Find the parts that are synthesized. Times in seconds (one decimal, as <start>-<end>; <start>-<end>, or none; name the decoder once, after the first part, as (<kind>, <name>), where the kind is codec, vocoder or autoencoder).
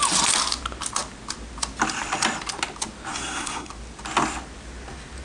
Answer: 3.1-3.7 (codec, SNAC)